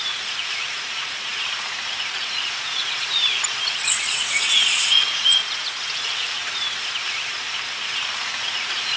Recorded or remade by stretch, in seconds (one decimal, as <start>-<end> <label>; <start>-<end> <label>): 0.0-6.4 remade; 6.4-8.1 recorded; 8.1-9.0 remade